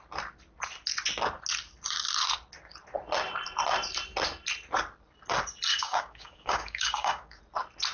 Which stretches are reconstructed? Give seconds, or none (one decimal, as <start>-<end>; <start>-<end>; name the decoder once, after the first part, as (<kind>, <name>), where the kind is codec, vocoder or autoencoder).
5.7-7.4 (codec, DAC)